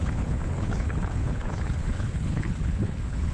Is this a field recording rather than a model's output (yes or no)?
no